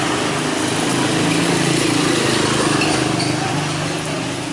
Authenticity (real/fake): real